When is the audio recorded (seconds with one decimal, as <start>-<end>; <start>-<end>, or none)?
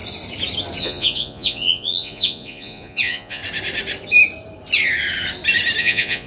0.0-0.8; 3.4-5.8